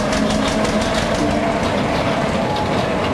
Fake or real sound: real